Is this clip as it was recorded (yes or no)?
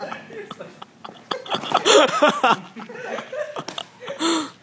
yes